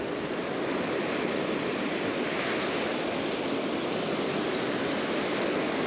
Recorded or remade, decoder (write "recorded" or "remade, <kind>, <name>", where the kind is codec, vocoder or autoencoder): recorded